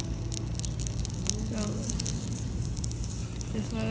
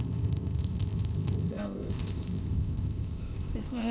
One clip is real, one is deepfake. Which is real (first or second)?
first